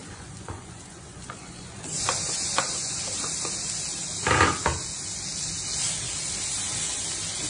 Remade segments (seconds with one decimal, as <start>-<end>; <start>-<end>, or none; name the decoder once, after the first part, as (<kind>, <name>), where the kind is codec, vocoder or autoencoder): 0.0-3.0 (vocoder, Vocos)